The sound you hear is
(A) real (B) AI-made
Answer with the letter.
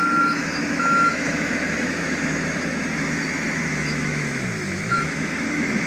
B